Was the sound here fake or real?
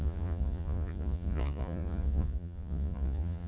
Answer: fake